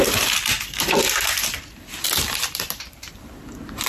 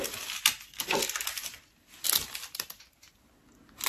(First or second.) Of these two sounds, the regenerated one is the first